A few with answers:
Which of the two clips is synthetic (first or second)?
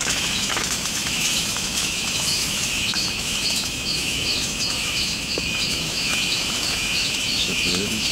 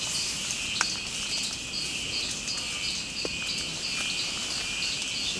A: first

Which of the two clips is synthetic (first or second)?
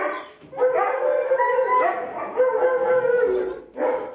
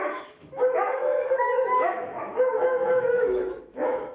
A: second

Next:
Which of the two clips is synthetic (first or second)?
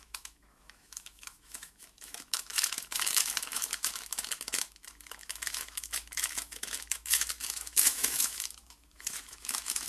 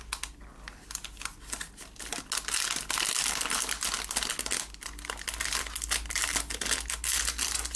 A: first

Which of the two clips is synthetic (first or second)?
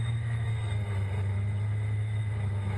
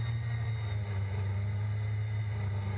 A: first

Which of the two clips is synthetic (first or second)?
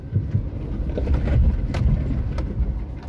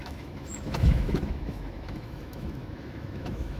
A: second